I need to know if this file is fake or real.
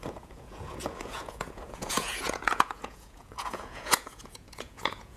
fake